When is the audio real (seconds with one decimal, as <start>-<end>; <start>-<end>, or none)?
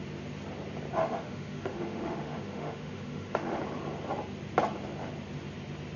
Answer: 0.0-1.0; 3.6-6.0